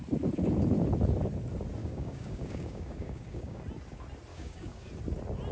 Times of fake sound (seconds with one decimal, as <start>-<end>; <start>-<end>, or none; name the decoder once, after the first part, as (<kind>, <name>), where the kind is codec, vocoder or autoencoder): 1.8-3.6 (codec, DAC); 4.3-4.9

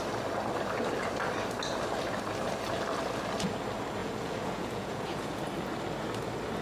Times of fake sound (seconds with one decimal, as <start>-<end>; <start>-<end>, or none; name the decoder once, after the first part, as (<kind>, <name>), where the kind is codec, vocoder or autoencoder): 4.0-5.4 (vocoder, Vocos)

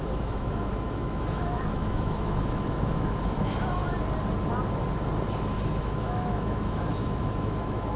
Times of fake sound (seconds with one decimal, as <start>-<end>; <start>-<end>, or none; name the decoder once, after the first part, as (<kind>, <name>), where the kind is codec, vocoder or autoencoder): 0.0-3.8 (autoencoder, DAC-VAE); 5.8-8.0

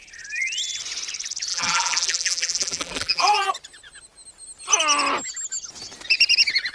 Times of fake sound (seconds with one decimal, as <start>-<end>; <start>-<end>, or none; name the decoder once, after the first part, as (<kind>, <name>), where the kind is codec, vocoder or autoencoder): 1.5-3.5 (vocoder, BigVGAN v2)

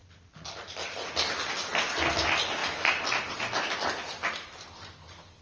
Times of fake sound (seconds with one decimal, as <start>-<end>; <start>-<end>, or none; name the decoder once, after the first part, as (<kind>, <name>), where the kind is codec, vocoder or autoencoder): none